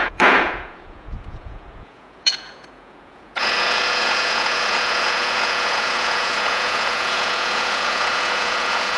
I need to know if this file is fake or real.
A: fake